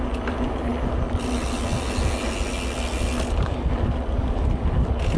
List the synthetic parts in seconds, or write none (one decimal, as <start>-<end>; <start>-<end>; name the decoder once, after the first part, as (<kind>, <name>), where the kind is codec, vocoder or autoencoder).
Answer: none